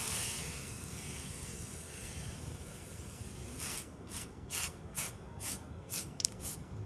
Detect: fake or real fake